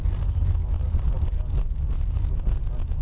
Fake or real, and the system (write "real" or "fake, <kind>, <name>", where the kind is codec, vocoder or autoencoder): real